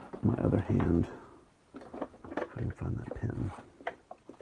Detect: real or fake real